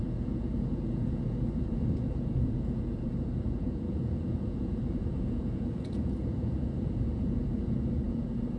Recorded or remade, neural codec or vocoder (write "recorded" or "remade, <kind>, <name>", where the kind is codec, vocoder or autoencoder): remade, vocoder, Vocos